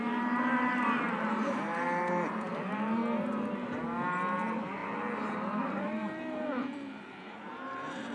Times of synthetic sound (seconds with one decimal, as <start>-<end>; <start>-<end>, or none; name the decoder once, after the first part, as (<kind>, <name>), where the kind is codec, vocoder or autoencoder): 0.0-3.0 (vocoder, BigVGAN v2); 3.5-4.8; 5.7-8.1